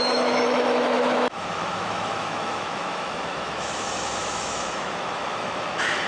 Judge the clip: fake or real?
fake